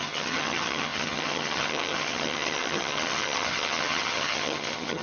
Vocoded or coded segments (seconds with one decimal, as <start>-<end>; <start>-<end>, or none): 0.0-5.0